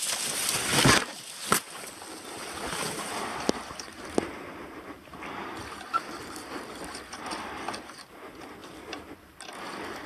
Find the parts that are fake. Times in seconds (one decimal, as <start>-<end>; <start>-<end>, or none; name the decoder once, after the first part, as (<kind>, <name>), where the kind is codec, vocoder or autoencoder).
8.6-9.3 (vocoder, BigVGAN v2)